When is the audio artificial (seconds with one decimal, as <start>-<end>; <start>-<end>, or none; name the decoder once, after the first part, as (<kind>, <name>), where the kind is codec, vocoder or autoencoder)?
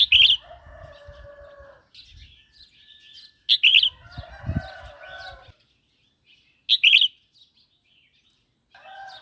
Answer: none